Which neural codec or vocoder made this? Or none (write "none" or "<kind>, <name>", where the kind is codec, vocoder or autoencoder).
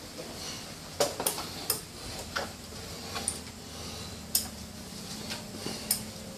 none